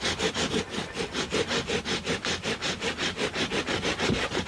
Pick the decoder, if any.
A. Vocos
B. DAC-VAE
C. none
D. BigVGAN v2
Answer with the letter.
D